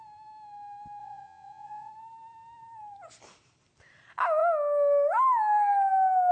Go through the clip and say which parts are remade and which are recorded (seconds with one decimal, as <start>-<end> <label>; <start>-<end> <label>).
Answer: 0.0-1.0 recorded; 1.0-1.9 remade; 1.9-6.3 recorded